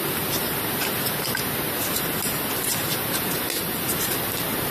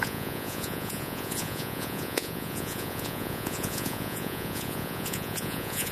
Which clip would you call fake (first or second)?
second